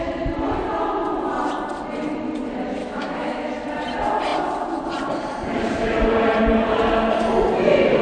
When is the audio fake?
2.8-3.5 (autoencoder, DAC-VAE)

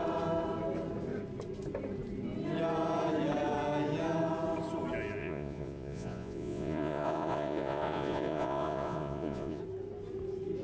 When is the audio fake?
5.2-9.6 (vocoder, Vocos)